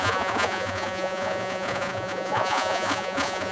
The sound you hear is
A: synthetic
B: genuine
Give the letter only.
A